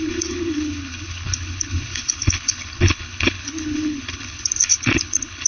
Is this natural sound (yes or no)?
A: no